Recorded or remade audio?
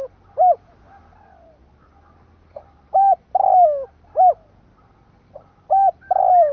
recorded